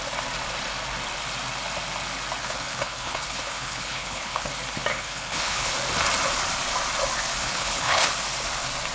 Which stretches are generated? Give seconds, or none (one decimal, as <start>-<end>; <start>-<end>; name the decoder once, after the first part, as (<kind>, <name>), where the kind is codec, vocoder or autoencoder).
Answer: 2.4-4.5 (codec, HILCodec); 4.9-5.7; 7.4-8.1